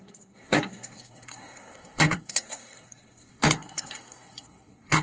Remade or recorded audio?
remade